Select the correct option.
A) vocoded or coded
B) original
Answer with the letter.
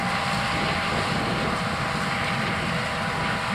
B